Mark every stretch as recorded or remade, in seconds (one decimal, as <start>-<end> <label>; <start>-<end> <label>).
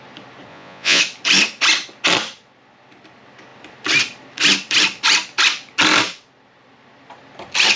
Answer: 0.0-0.5 recorded; 0.5-1.0 remade; 1.0-7.8 recorded